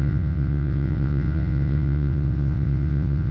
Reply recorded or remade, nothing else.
remade